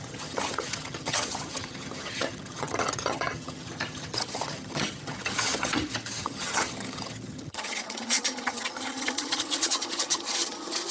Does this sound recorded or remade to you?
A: remade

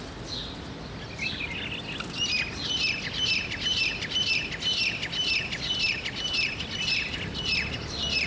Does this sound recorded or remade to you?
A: recorded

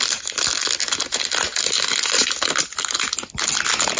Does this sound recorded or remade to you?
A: recorded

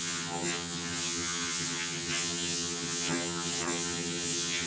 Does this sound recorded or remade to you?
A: remade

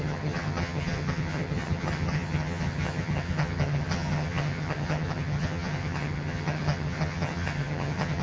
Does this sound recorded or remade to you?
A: remade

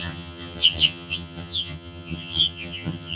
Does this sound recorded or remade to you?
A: remade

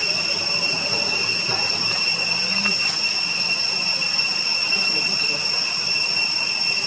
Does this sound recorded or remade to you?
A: recorded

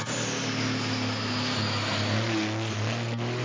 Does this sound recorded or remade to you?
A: recorded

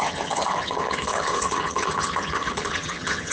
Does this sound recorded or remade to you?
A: remade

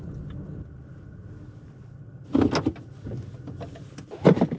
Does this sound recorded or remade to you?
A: recorded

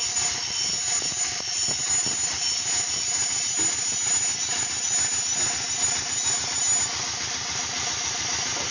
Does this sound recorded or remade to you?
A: recorded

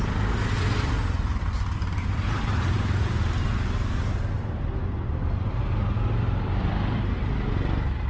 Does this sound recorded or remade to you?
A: recorded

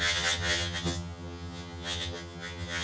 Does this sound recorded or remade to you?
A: remade